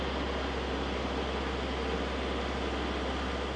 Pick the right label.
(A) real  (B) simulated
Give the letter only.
A